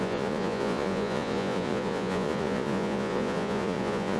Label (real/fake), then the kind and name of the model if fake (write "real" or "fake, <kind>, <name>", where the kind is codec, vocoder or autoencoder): fake, vocoder, Vocos